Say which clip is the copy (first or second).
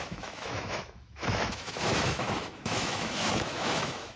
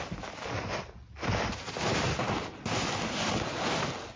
first